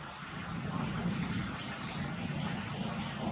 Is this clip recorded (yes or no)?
yes